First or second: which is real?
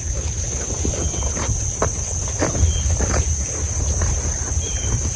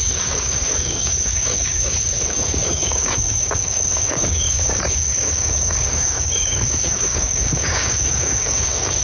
first